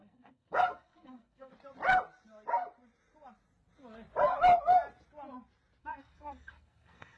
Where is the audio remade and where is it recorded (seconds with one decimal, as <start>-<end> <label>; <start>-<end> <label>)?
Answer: 0.0-1.5 remade; 1.5-5.8 recorded; 5.8-7.2 remade